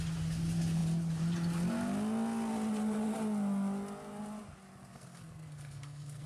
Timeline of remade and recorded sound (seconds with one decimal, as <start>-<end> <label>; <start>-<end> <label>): 0.0-4.9 recorded; 4.9-6.3 remade